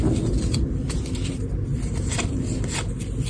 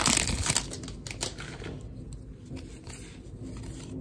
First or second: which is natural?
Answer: second